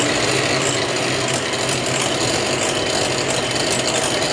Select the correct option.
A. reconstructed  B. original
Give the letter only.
B